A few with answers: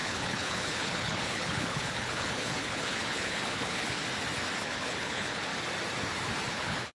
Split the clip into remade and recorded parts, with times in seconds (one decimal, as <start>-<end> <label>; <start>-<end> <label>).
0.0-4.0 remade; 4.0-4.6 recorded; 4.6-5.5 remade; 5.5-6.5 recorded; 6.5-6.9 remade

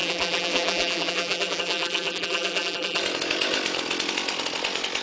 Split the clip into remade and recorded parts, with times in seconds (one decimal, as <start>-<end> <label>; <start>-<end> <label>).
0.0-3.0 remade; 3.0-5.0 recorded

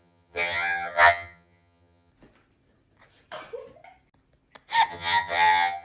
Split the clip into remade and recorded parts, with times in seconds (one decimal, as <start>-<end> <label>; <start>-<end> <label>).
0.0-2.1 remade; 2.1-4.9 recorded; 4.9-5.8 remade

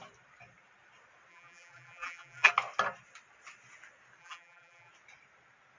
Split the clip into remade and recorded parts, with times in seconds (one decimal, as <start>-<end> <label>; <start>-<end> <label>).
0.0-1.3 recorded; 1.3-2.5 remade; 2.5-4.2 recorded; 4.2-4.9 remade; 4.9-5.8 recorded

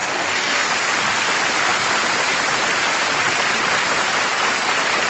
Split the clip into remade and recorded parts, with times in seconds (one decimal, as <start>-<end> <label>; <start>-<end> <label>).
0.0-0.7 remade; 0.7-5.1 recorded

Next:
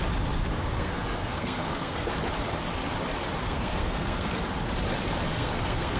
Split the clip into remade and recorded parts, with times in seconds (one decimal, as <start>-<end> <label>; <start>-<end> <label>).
0.0-0.5 recorded; 0.5-2.1 remade; 2.1-3.4 recorded; 3.4-4.4 remade; 4.4-5.3 recorded; 5.3-6.0 remade

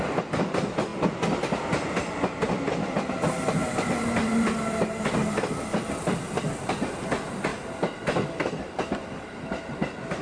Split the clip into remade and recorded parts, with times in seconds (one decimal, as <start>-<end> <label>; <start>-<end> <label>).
0.0-3.6 recorded; 3.6-6.5 remade; 6.5-7.5 recorded; 7.5-9.6 remade; 9.6-10.2 recorded